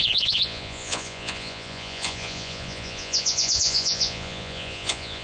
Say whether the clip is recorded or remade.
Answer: remade